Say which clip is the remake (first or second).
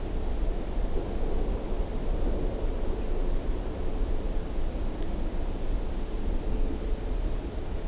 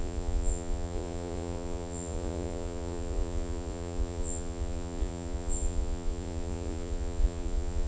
second